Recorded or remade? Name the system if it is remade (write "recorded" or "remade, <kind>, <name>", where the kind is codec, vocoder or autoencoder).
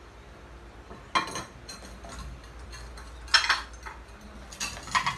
recorded